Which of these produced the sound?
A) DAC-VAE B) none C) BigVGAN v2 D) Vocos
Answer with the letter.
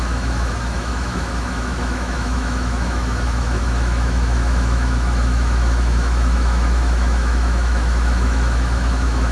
A